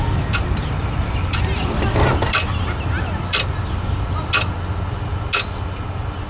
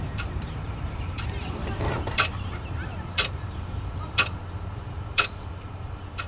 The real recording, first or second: first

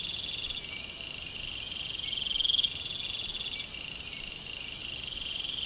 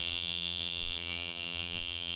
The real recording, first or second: first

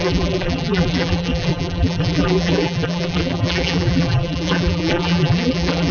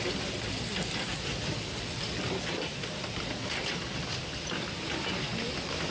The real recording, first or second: second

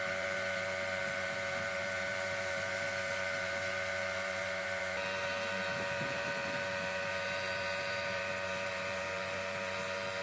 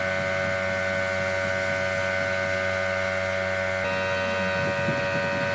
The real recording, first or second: second